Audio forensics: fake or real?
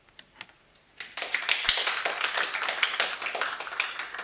real